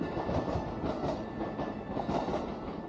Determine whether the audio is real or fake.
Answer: fake